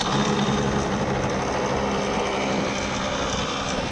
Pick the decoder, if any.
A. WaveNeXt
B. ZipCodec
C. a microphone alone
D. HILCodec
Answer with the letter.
C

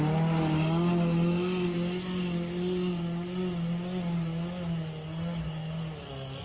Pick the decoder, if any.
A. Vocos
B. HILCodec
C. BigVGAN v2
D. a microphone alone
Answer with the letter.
D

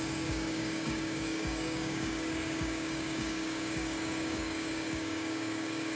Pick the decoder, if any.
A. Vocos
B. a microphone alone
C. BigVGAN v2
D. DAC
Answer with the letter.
D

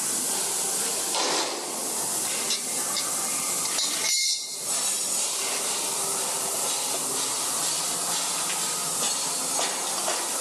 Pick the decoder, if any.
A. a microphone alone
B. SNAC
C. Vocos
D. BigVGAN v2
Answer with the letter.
A